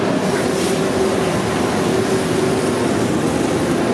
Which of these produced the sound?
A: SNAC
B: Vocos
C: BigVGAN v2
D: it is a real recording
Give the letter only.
D